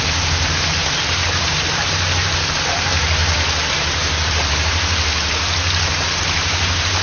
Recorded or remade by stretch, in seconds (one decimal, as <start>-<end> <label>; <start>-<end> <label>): 0.0-3.2 remade; 3.2-3.8 recorded; 3.8-5.1 remade; 5.1-5.9 recorded; 5.9-7.0 remade